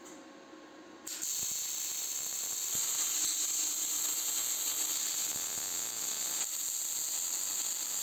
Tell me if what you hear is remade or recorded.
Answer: recorded